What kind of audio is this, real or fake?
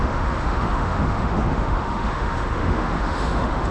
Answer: fake